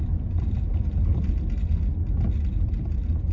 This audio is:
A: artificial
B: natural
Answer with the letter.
B